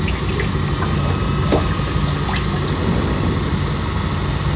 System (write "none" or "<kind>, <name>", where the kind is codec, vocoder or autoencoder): none